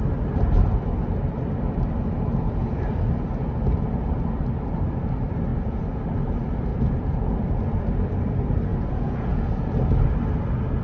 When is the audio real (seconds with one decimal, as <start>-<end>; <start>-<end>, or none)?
0.0-5.5; 6.0-6.7; 7.8-8.7; 9.7-10.8

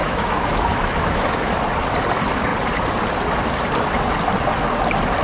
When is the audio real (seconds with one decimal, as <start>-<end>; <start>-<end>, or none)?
1.5-5.2